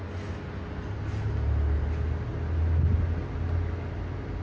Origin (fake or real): real